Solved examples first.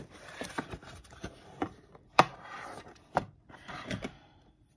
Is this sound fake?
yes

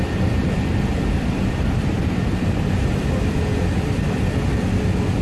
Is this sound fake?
yes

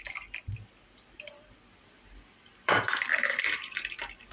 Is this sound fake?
yes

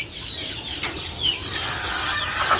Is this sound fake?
yes